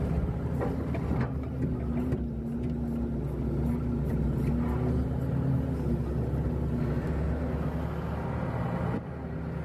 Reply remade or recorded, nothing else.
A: recorded